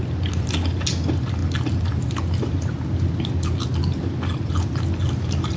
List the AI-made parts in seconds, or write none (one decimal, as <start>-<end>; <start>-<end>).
none